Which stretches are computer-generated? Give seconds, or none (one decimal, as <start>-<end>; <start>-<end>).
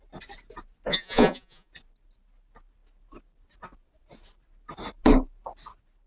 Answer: 0.9-1.7